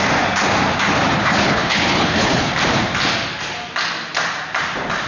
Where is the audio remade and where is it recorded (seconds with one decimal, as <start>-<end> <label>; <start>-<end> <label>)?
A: 0.0-1.2 recorded; 1.2-2.5 remade; 2.5-5.1 recorded